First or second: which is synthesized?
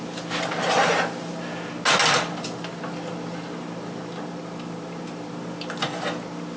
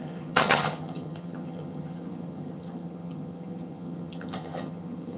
second